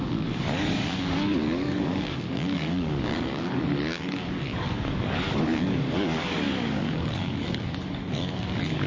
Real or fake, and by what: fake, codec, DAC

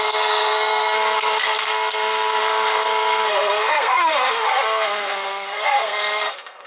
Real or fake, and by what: fake, codec, SNAC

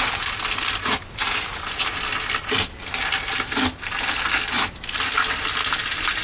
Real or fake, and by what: real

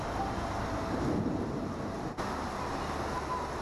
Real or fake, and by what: real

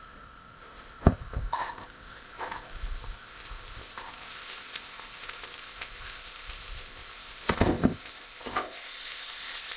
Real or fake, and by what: fake, codec, ZipCodec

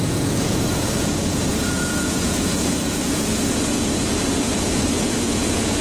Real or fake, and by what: fake, vocoder, Vocos